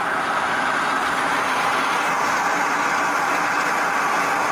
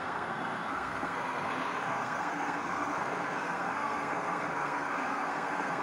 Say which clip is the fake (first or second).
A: second